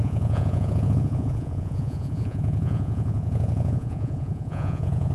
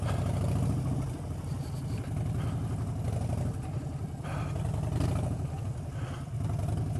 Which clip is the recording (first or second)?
second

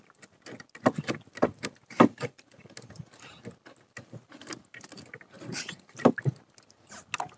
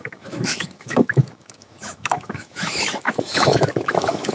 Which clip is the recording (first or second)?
first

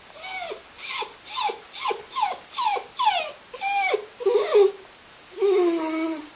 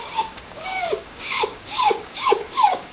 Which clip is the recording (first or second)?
first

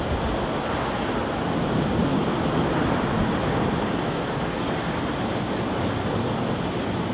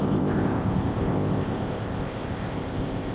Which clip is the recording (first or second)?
first